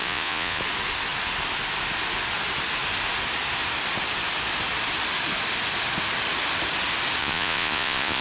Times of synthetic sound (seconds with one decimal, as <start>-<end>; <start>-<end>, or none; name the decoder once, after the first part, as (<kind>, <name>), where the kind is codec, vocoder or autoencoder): 0.0-0.6 (vocoder, Vocos); 7.2-8.2